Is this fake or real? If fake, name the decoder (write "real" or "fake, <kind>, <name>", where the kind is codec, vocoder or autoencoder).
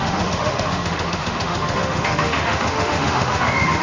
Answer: fake, autoencoder, DAC-VAE